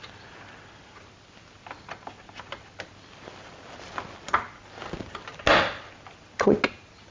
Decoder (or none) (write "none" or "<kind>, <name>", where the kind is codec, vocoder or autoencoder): none